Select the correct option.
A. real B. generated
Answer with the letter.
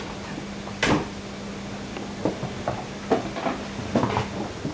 A